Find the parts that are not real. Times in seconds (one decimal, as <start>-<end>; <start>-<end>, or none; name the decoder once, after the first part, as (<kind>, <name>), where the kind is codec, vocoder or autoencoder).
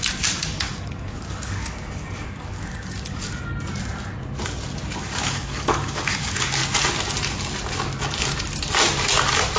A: 0.0-3.5 (codec, DAC); 5.0-6.6